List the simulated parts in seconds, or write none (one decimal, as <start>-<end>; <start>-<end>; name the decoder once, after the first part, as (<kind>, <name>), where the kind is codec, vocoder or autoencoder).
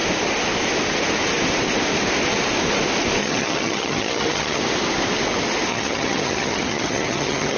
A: 3.2-4.6 (vocoder, HiFi-GAN); 5.7-7.6